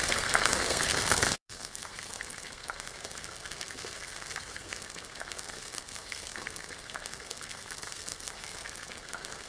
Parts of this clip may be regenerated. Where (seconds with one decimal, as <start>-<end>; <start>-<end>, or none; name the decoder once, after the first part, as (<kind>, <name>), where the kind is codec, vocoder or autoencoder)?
0.0-9.5 (codec, SNAC)